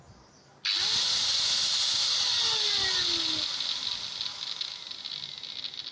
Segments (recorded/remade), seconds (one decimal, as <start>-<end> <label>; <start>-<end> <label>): 0.0-4.3 recorded; 4.3-4.8 remade; 4.8-5.9 recorded